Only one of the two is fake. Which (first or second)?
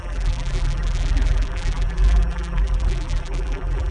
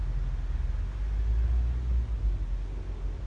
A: first